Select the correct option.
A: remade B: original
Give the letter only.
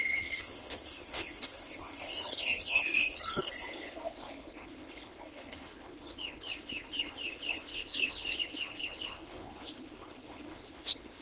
A